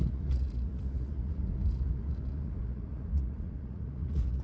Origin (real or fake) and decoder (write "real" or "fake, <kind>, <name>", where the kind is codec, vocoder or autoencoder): fake, vocoder, Vocos